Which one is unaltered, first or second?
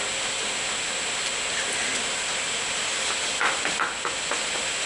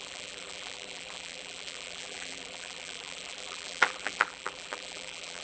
first